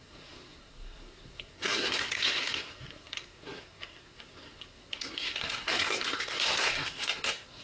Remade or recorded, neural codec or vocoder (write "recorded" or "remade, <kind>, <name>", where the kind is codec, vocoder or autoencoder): remade, codec, SNAC